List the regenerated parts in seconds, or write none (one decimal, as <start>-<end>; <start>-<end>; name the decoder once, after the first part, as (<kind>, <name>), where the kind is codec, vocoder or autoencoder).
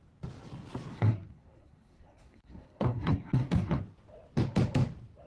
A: 0.9-3.8 (codec, SNAC)